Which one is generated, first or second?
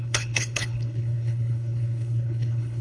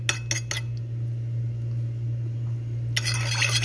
first